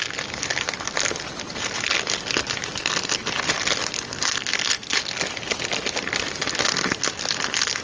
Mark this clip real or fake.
real